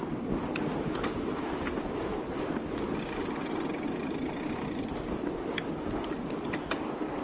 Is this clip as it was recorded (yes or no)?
yes